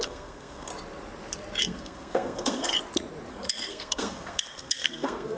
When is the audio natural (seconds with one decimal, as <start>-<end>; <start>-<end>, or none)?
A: 0.7-1.6; 2.7-3.3